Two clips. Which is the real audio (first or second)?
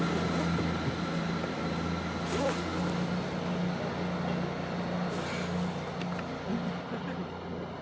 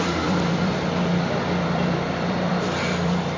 first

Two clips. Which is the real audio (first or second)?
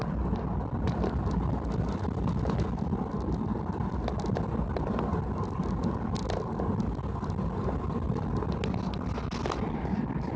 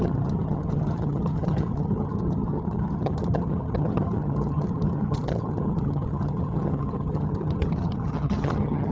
first